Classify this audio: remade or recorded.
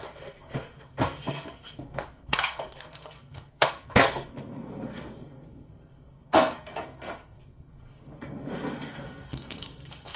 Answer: remade